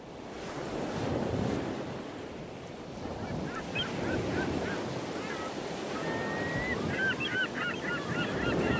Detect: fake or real real